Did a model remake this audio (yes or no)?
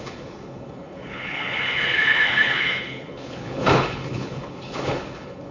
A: yes